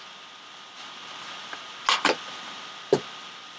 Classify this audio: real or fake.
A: real